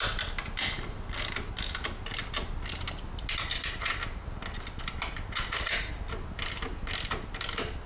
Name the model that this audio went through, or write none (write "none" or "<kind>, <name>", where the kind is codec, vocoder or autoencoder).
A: none